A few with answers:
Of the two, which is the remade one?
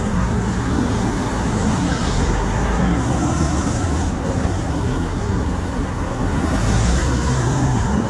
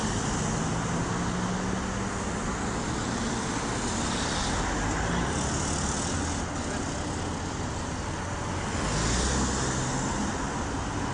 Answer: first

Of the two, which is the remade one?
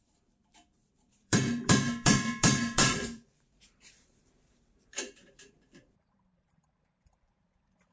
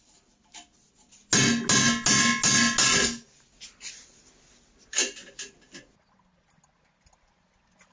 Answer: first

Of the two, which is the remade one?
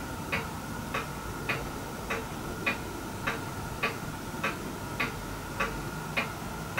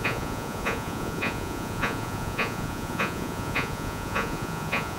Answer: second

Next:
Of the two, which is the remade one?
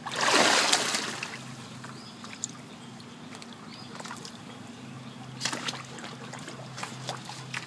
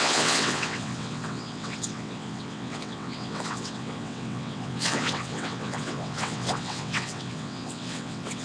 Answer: second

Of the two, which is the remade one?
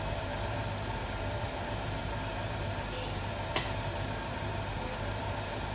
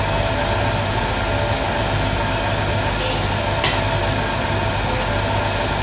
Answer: first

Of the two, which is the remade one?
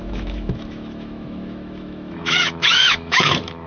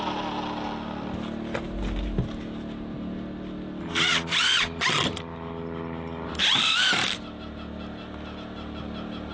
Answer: first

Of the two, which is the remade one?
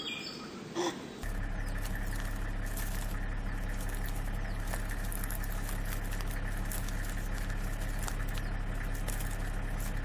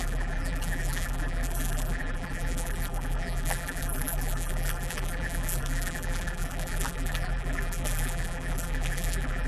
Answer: second